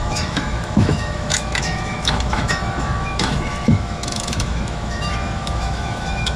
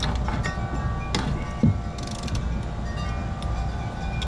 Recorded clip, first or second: second